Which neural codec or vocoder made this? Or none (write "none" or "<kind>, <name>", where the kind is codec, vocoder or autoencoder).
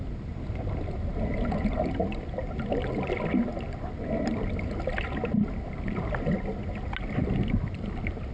none